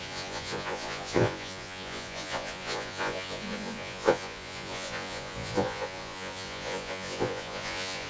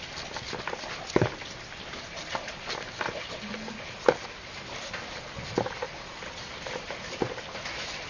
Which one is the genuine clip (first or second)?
second